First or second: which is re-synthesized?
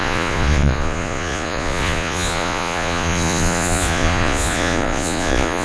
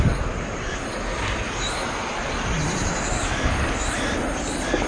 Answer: first